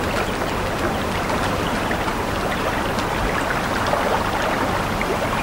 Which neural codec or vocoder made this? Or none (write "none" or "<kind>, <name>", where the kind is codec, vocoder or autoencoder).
none